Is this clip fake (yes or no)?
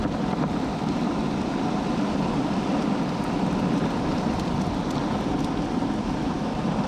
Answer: yes